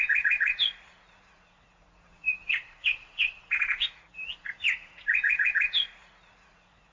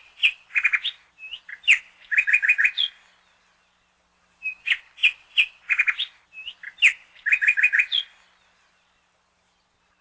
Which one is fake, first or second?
first